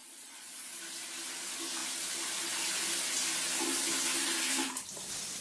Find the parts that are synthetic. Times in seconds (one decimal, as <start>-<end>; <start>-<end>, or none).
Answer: 0.0-0.8